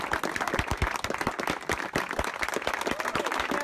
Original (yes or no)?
yes